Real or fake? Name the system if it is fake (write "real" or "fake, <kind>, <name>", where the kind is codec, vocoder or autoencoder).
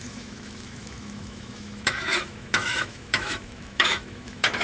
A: fake, autoencoder, DAC-VAE